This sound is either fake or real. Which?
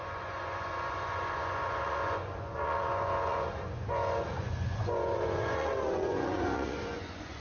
fake